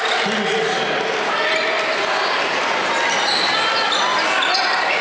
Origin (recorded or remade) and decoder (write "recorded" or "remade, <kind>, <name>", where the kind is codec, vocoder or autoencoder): recorded